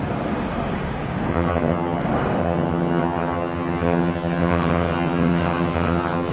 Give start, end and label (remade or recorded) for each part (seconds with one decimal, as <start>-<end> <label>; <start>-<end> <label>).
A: 0.0-1.3 recorded; 1.3-2.0 remade; 2.0-2.4 recorded; 2.4-6.3 remade